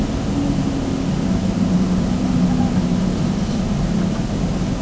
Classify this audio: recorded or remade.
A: recorded